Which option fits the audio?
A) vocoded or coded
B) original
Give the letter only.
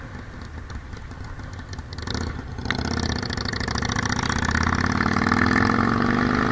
B